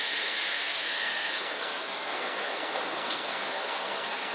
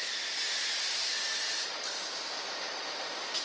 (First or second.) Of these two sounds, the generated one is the first